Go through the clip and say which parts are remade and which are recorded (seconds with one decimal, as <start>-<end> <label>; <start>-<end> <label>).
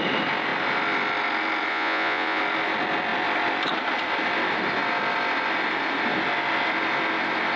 0.0-1.7 recorded; 1.7-2.4 remade; 2.4-7.6 recorded